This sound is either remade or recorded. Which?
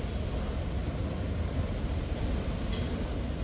recorded